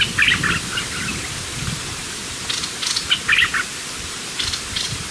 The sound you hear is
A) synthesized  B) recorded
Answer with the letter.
A